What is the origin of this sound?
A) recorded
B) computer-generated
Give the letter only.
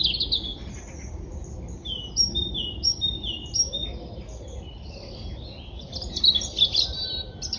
A